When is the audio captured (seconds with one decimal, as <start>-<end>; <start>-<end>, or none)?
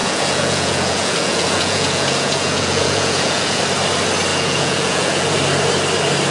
3.6-4.3; 5.4-6.3